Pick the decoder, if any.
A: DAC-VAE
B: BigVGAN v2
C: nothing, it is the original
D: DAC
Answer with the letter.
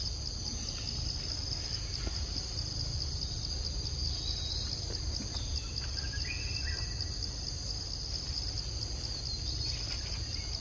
C